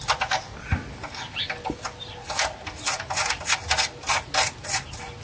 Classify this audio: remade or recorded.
recorded